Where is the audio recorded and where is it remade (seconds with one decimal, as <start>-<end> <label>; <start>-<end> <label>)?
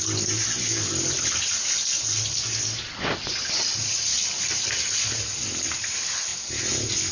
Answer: 0.0-7.1 recorded